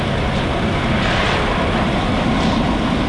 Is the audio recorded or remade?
recorded